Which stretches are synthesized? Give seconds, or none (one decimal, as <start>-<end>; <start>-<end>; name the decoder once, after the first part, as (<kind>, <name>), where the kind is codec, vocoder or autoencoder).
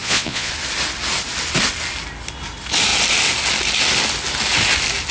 0.0-0.5 (vocoder, Vocos)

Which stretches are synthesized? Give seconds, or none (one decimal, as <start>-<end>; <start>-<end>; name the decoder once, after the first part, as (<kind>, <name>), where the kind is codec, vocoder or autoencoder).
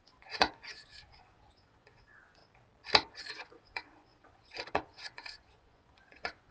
0.0-2.4 (vocoder, Vocos); 3.1-6.5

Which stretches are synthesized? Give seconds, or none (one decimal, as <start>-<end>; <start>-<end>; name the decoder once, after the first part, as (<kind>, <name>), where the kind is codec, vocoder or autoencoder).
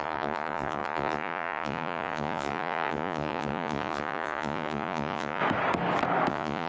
0.0-5.4 (vocoder, Vocos); 6.3-6.7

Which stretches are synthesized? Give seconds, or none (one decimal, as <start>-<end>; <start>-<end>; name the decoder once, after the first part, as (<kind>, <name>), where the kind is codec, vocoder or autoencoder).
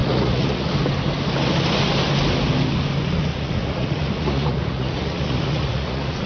0.0-0.7 (vocoder, Vocos); 3.3-6.3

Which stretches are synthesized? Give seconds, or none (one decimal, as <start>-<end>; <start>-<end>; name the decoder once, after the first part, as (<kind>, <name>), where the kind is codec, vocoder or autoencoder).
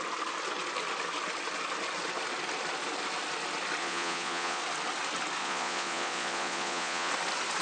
3.8-4.6 (vocoder, Vocos); 5.4-7.1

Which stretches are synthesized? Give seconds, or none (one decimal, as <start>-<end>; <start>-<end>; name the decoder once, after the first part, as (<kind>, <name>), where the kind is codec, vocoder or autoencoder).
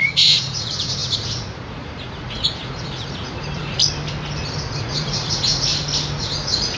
0.0-3.8 (vocoder, Vocos); 4.8-5.7; 6.2-6.8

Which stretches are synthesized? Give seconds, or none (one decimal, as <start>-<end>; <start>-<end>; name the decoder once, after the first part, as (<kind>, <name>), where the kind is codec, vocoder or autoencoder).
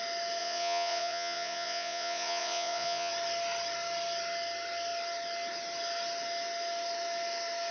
0.4-3.1 (vocoder, Vocos)